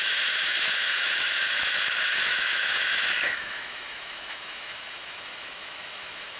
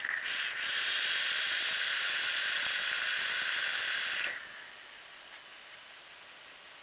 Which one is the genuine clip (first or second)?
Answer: second